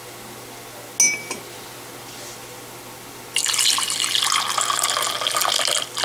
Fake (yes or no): no